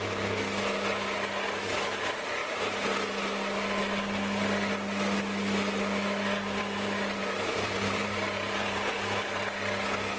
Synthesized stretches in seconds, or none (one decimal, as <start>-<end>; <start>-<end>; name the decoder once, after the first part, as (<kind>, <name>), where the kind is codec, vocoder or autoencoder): 7.2-8.9 (vocoder, BigVGAN v2)